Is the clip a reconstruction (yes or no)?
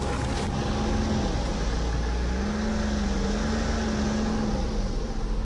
no